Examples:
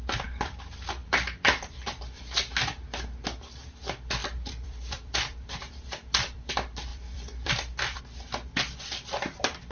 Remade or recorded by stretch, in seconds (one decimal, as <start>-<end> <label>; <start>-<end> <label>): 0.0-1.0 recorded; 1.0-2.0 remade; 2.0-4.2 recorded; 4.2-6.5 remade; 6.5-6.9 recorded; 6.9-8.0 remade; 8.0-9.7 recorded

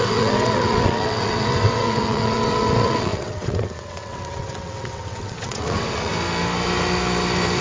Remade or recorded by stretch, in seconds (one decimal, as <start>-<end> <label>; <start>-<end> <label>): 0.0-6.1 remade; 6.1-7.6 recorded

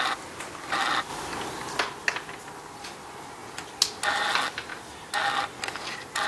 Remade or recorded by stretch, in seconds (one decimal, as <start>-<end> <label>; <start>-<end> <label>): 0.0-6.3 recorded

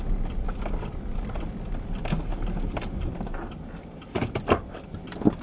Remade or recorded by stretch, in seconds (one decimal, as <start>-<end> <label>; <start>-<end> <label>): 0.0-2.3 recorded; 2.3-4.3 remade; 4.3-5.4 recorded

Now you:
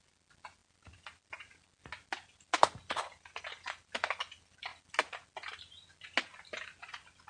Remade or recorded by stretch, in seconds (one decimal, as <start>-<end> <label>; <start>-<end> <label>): 0.0-7.3 recorded

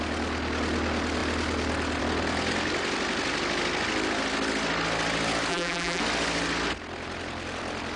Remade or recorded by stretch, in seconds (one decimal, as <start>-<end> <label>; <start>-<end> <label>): 0.0-5.5 recorded; 5.5-6.0 remade; 6.0-8.0 recorded